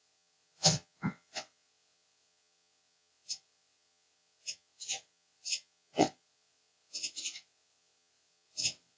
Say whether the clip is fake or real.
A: fake